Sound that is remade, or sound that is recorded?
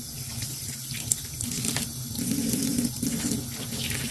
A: recorded